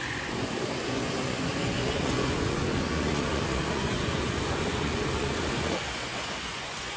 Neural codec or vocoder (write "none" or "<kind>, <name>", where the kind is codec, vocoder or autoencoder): vocoder, Vocos